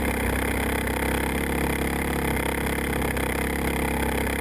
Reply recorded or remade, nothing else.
recorded